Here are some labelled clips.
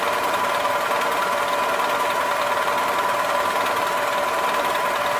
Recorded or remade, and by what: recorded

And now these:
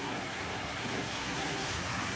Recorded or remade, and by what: remade, codec, SNAC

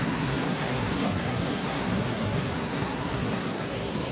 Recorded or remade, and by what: remade, codec, SNAC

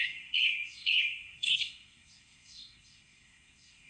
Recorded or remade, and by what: remade, codec, SNAC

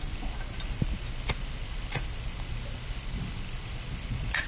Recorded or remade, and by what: recorded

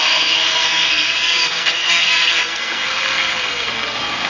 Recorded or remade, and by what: remade, codec, SNAC